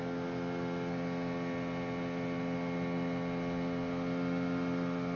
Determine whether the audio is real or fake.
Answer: real